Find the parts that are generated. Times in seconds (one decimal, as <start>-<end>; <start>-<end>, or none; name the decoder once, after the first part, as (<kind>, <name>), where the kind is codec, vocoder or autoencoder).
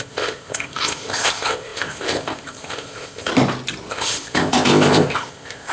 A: 0.0-3.3 (codec, ZipCodec); 3.9-5.7